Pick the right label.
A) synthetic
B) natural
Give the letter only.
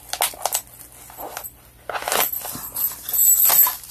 B